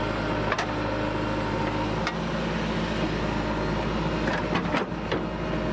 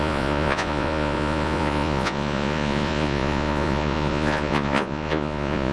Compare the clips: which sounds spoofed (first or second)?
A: second